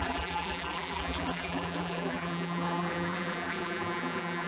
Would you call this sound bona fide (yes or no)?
no